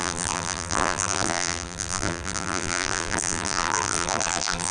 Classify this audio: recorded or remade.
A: remade